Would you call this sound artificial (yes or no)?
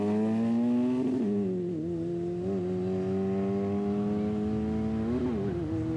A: no